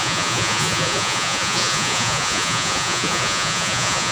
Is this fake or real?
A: fake